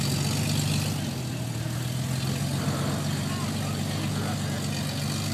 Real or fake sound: real